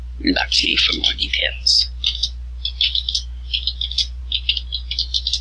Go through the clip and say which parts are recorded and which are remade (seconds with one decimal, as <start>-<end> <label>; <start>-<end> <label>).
0.0-5.4 recorded